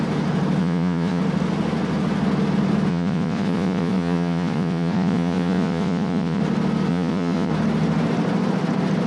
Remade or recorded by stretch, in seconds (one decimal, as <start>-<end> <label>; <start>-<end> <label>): 0.0-0.6 recorded; 0.6-1.2 remade; 1.2-2.9 recorded; 2.9-6.4 remade; 6.4-6.9 recorded; 6.9-7.5 remade; 7.5-9.1 recorded